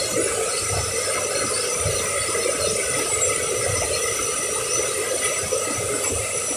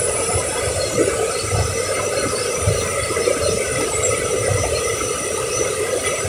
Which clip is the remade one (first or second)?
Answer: second